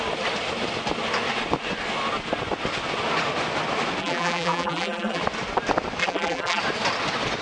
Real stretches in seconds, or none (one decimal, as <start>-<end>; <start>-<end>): 0.0-4.0; 5.2-6.0; 6.6-7.4